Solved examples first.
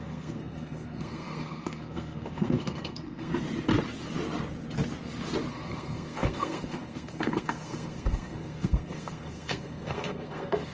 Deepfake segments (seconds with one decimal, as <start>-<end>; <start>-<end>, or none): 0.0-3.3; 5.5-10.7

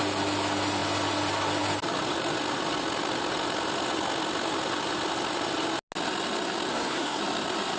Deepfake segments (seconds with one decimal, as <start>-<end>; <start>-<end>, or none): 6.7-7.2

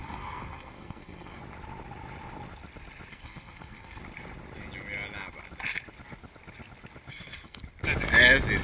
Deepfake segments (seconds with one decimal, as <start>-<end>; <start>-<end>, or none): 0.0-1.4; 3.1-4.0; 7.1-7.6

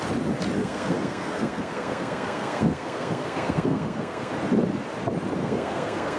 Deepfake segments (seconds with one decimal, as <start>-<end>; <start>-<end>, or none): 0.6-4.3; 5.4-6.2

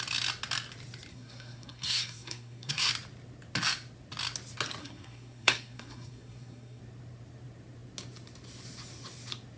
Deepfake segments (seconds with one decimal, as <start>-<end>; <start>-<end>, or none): 1.1-2.9; 4.8-6.8